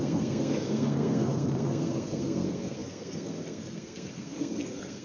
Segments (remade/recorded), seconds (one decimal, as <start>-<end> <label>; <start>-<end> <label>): 0.0-5.0 remade